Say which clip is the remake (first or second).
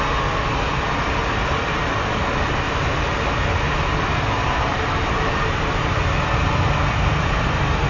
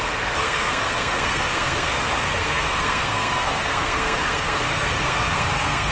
second